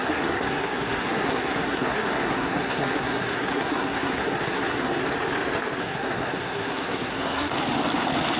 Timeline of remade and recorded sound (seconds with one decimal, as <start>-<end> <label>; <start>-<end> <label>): 0.0-5.0 remade; 5.0-5.8 recorded; 5.8-7.5 remade; 7.5-8.4 recorded